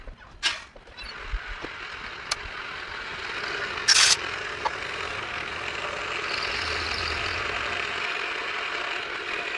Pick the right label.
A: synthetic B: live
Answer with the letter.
B